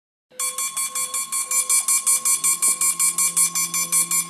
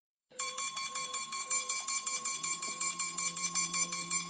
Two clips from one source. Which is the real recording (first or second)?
first